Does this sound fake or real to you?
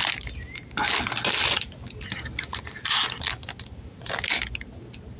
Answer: real